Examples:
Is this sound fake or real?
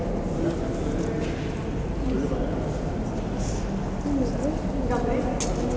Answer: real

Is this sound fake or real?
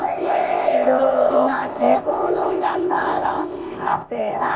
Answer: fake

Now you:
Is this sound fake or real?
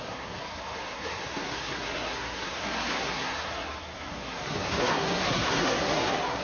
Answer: fake